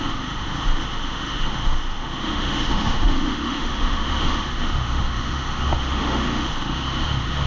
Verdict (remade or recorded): remade